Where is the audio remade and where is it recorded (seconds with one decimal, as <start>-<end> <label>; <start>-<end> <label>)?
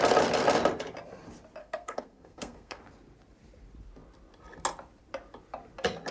0.0-1.6 recorded; 1.6-2.8 remade; 2.8-6.1 recorded